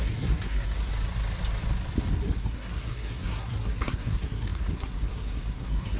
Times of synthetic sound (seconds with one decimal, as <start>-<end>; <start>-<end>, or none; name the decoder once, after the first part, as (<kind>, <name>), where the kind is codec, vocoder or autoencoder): 0.0-0.9 (codec, SNAC); 2.1-6.0